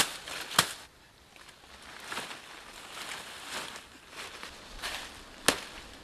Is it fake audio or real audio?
real